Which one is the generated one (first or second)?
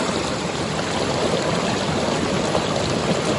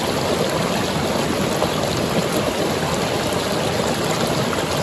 first